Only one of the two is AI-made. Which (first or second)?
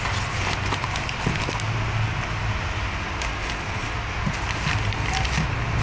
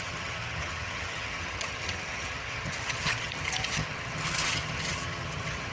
second